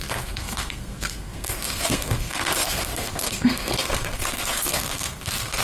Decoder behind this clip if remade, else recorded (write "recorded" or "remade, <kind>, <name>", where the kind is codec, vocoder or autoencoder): remade, codec, SNAC